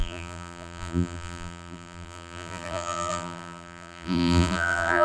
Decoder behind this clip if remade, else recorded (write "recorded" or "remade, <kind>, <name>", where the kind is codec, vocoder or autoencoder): remade, vocoder, BigVGAN v2